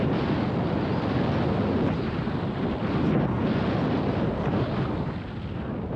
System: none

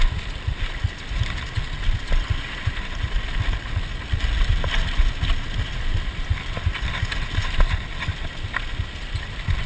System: none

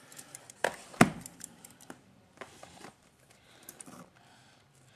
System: vocoder, BigVGAN v2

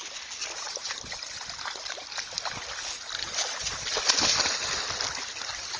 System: none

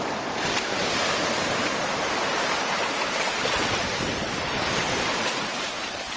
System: vocoder, BigVGAN v2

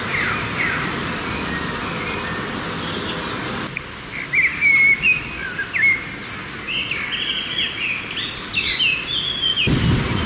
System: none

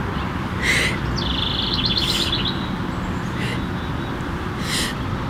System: none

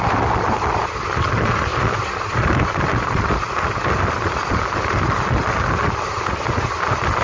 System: none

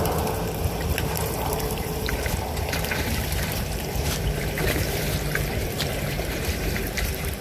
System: vocoder, BigVGAN v2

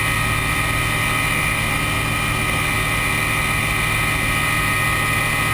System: none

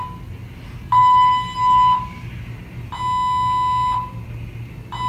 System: none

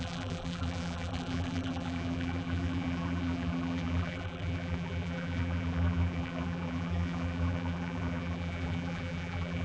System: vocoder, BigVGAN v2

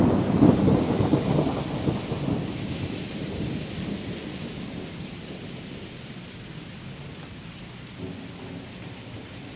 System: vocoder, BigVGAN v2